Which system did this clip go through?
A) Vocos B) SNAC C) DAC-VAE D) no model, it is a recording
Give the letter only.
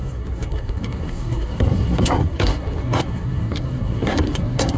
B